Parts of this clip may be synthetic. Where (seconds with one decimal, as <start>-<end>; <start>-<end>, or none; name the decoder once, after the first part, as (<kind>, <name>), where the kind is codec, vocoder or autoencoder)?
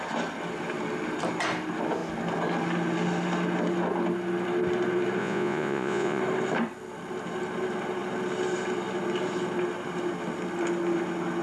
5.2-6.2 (vocoder, Vocos)